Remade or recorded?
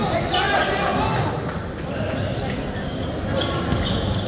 recorded